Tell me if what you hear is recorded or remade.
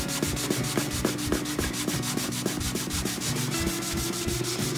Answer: recorded